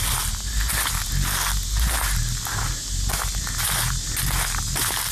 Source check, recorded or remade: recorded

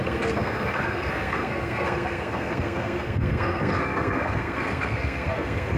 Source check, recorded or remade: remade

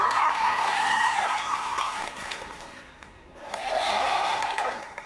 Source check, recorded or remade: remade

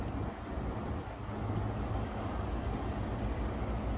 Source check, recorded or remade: recorded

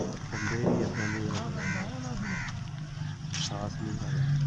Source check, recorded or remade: recorded